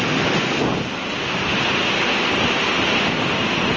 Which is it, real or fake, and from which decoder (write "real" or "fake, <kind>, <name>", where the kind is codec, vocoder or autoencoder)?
real